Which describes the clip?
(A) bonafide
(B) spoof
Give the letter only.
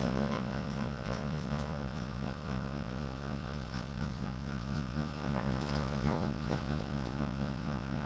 B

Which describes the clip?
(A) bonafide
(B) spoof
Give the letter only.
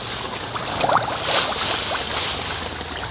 A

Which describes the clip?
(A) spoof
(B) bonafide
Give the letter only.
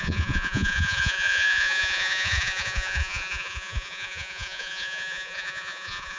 A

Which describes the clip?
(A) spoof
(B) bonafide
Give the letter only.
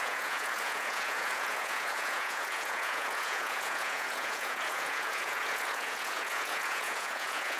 A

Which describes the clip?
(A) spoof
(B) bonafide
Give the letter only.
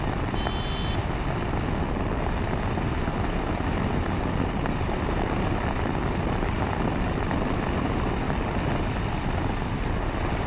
B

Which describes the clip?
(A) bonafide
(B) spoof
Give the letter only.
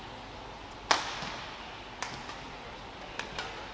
A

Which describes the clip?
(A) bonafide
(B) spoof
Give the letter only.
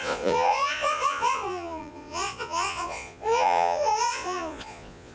B